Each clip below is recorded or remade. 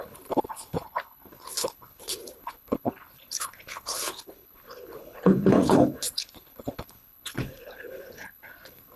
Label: remade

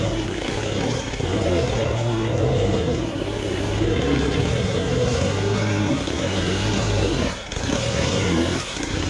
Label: remade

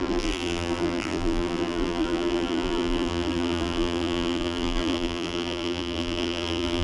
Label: remade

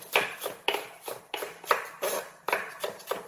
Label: recorded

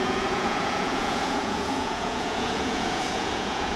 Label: remade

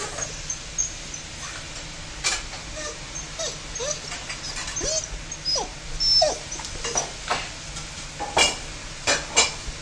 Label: recorded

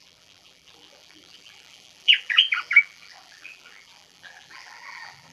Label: remade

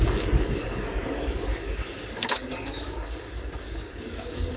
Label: remade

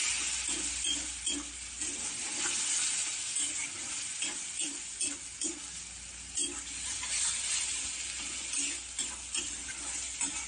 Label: recorded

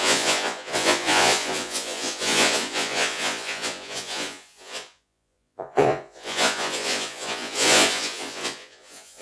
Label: remade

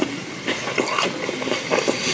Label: recorded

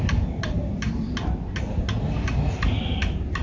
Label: recorded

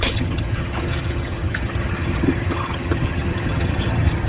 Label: remade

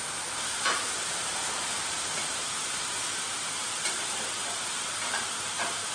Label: remade